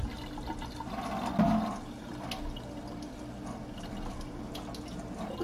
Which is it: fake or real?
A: real